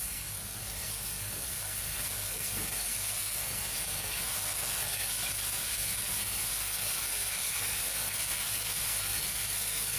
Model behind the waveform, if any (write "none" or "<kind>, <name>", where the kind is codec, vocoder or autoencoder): codec, SNAC